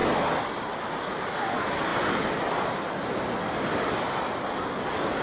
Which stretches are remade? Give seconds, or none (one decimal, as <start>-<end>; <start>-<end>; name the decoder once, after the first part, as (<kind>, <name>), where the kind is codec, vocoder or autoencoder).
none